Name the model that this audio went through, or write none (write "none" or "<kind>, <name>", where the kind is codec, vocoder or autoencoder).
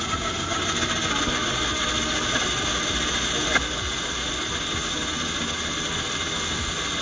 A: none